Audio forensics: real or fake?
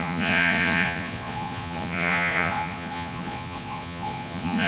fake